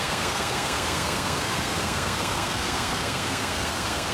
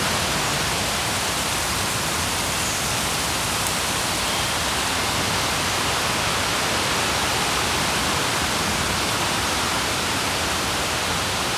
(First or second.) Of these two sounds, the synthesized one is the first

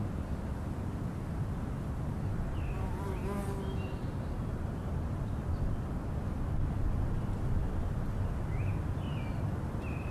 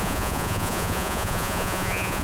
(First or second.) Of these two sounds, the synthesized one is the second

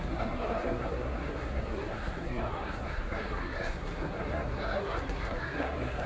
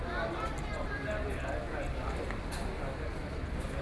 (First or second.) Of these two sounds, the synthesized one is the first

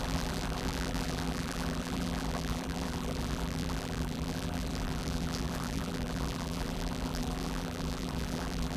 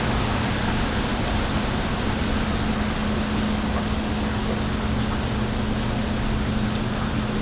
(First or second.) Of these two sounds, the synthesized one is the first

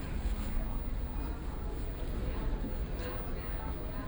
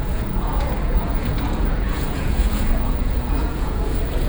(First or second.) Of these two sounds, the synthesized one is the second